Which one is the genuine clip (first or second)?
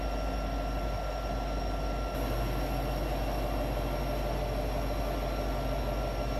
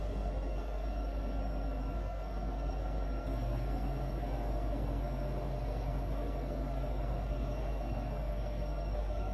first